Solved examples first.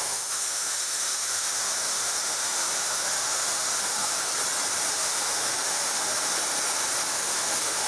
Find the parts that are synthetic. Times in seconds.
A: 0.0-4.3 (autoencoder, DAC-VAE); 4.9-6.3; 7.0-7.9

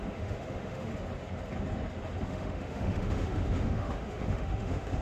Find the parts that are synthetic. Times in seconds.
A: 0.0-0.9 (autoencoder, DAC-VAE); 2.2-5.0

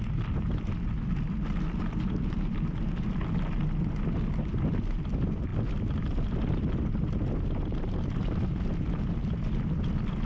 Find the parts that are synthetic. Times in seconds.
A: none

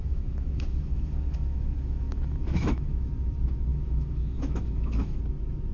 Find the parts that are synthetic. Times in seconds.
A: 0.0-3.1 (autoencoder, DAC-VAE); 3.7-5.2

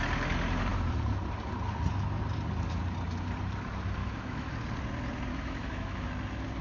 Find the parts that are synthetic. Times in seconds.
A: 4.0-4.5 (autoencoder, DAC-VAE); 5.3-6.1

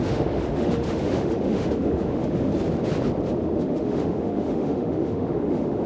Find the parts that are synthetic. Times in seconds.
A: 0.0-2.5 (autoencoder, DAC-VAE); 3.3-5.9